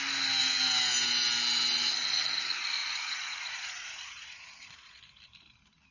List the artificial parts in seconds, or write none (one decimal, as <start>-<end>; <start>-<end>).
2.8-5.0